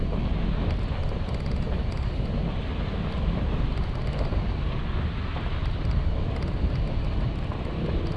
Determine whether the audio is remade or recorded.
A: recorded